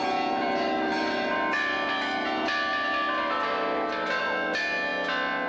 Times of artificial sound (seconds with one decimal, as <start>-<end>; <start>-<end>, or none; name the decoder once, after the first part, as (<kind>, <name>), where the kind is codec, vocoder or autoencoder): 0.9-4.2 (vocoder, BigVGAN v2)